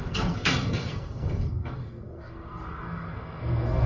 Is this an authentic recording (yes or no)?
no